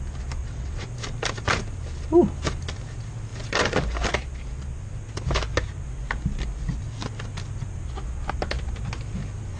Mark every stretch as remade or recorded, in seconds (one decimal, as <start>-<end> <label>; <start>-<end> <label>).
0.0-0.4 recorded; 0.4-0.9 remade; 0.9-9.6 recorded